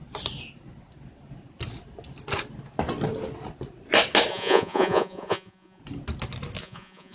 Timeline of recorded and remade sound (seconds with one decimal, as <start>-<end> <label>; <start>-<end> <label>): 0.0-4.3 recorded; 4.3-5.8 remade; 5.8-6.6 recorded; 6.6-7.1 remade